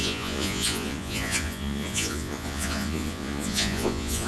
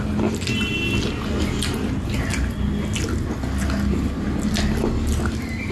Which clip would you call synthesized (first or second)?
first